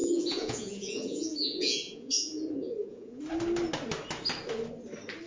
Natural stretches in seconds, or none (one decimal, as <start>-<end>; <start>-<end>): 3.2-5.3